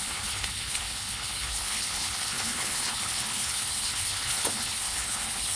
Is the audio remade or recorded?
remade